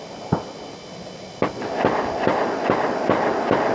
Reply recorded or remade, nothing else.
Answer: recorded